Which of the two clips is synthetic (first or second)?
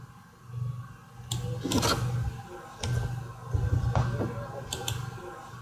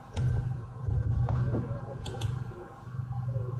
second